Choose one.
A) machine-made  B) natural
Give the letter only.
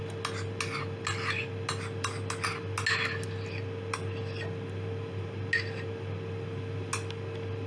B